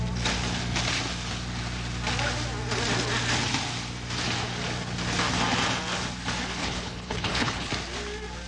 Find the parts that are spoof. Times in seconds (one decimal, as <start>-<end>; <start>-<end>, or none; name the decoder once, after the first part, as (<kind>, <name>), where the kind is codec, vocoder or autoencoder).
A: 6.6-7.7 (codec, HILCodec)